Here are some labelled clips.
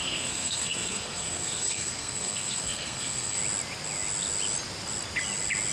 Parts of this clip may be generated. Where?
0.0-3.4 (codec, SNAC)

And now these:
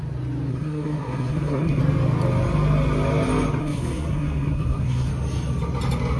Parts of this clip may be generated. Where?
0.5-1.8 (codec, SNAC); 3.6-5.1

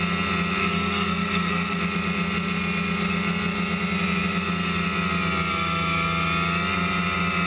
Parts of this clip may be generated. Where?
0.6-1.8 (codec, SNAC)